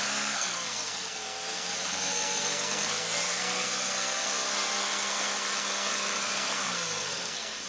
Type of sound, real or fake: fake